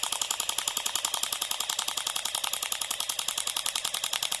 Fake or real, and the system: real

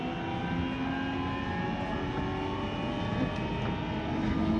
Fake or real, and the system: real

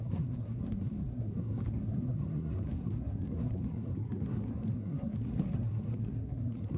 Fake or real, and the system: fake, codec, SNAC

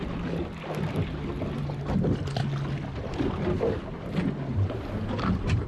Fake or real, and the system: real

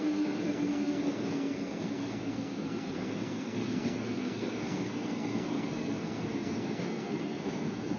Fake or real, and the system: fake, codec, SNAC